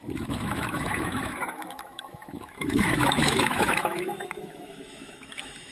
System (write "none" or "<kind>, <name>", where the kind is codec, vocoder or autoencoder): autoencoder, DAC-VAE